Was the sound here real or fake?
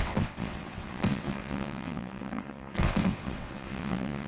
fake